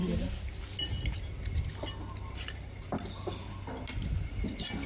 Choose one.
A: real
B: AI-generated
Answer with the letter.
A